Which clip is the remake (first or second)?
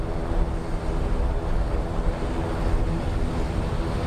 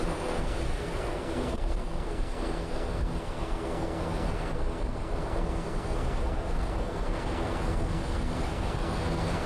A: second